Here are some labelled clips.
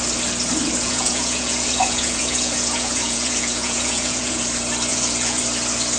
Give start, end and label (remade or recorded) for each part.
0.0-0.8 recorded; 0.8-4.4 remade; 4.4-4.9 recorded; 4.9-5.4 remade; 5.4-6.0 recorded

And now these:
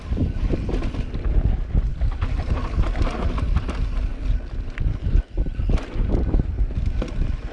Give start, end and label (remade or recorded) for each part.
0.0-7.5 recorded